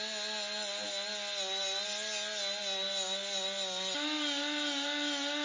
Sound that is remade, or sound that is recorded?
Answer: recorded